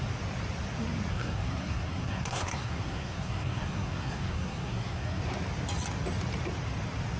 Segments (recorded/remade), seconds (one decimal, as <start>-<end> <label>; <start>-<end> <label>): 0.0-1.1 recorded; 1.1-5.2 remade; 5.2-7.2 recorded